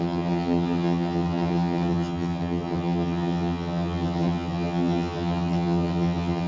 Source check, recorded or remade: remade